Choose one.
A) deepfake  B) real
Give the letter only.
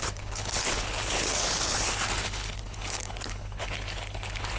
A